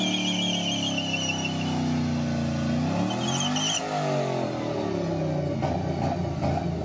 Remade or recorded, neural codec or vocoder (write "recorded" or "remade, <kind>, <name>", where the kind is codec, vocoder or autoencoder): recorded